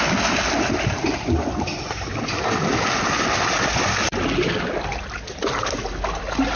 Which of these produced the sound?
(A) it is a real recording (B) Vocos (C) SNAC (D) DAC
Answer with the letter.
A